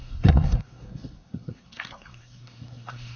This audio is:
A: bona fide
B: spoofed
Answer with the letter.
B